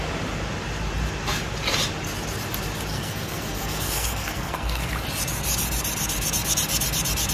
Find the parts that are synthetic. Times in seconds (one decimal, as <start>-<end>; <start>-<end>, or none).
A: 2.9-4.9